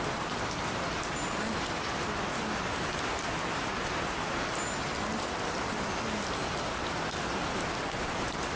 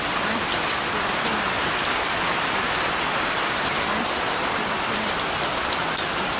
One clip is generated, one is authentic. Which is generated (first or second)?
second